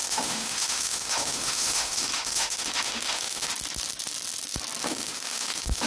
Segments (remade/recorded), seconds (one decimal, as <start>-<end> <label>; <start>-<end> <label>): 0.0-3.5 remade; 3.5-4.8 recorded; 4.8-5.9 remade